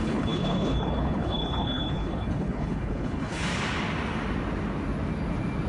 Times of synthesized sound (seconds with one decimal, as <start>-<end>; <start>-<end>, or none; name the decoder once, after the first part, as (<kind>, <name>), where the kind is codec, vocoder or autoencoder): 0.0-3.4 (codec, HILCodec)